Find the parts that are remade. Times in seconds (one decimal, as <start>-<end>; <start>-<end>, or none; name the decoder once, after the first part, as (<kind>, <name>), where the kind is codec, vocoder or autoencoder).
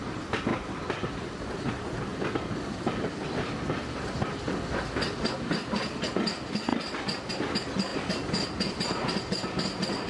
0.5-1.3 (vocoder, BigVGAN v2)